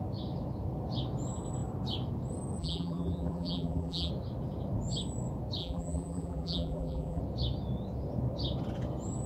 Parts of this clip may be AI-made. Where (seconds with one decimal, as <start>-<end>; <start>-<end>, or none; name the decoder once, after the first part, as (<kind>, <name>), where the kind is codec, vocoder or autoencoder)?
2.6-4.1 (vocoder, BigVGAN v2); 5.6-7.2